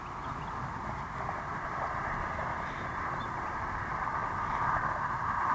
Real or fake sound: real